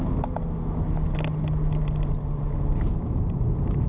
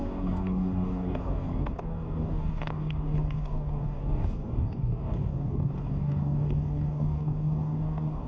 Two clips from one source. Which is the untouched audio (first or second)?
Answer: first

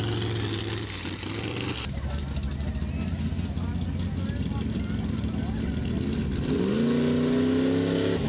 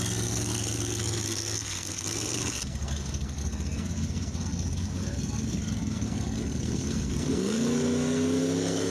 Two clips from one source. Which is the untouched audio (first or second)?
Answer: first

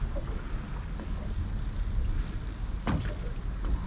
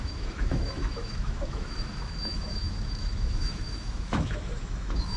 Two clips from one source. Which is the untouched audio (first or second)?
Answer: first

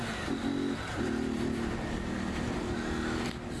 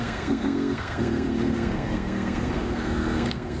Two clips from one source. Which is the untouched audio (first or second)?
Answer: first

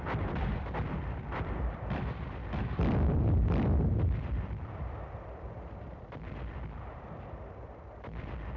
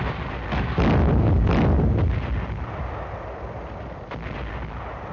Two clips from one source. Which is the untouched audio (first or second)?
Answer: second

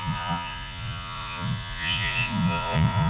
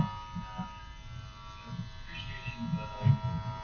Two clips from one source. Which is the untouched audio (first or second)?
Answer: second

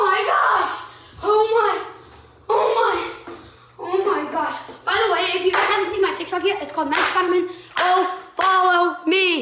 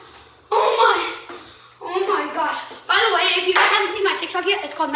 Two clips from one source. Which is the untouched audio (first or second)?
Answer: first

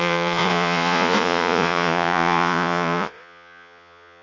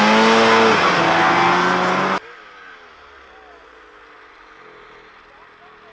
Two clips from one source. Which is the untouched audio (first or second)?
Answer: second